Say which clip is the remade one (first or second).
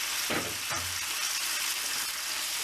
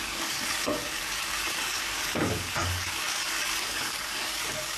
second